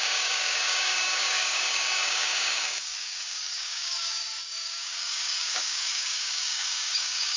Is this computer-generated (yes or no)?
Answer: yes